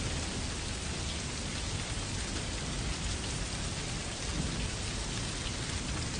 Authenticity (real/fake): real